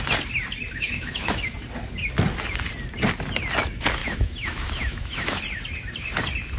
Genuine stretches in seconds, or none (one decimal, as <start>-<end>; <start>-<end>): 0.0-0.7; 1.5-4.0; 5.4-6.6